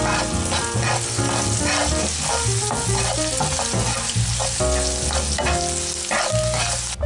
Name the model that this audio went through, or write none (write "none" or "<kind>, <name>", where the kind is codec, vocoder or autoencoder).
none